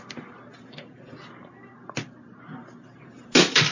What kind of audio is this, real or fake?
real